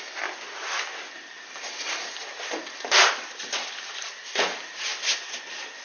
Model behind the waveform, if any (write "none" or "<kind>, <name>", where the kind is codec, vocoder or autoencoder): none